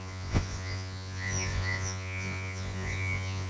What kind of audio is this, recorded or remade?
remade